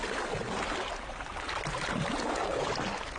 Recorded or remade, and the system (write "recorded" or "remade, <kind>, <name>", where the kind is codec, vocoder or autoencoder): recorded